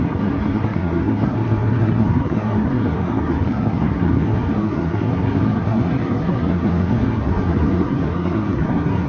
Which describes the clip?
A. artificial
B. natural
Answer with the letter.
A